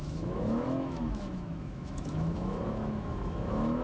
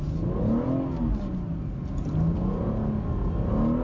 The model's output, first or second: first